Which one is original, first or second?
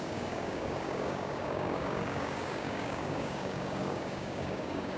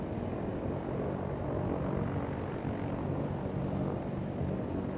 second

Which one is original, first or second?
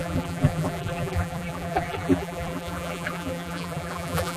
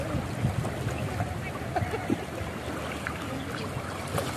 second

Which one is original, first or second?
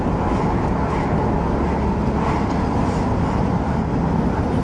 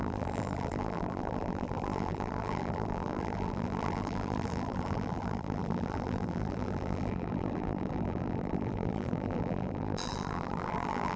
first